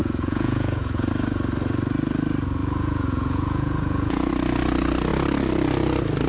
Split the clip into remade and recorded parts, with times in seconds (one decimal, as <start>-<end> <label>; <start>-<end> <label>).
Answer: 0.0-1.1 remade; 1.1-2.6 recorded; 2.6-4.3 remade; 4.3-6.3 recorded